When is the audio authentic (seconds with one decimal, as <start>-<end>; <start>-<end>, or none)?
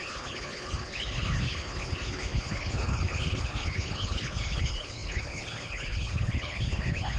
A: none